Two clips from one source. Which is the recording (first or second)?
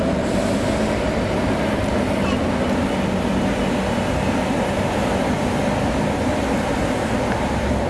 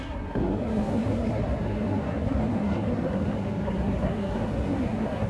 first